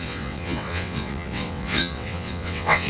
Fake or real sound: fake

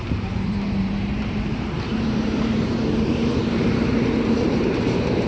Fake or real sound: fake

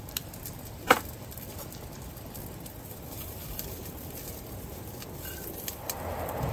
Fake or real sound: fake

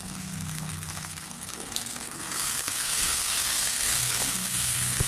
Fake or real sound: fake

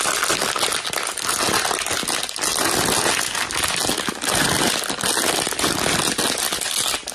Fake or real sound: real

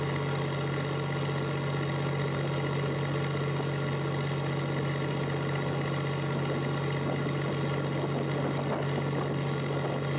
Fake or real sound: real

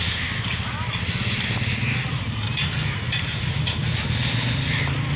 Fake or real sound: real